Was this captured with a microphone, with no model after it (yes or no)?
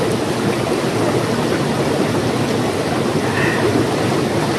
yes